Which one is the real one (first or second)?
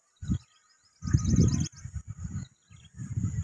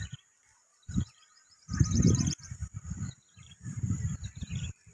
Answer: first